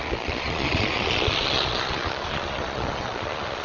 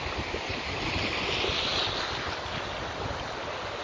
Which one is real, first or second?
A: second